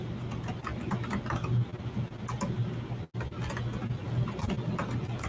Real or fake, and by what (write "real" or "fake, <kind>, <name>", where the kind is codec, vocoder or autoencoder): real